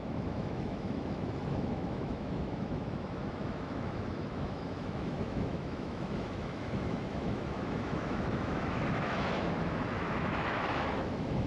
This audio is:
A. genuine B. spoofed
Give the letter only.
B